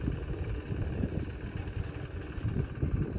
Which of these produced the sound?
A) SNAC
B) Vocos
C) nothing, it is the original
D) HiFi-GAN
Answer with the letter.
C